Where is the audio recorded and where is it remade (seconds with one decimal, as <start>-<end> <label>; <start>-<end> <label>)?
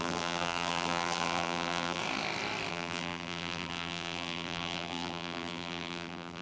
0.0-2.0 remade; 2.0-2.7 recorded; 2.7-6.4 remade